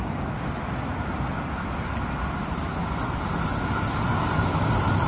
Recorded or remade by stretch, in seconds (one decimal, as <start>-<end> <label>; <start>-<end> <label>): 0.0-5.1 recorded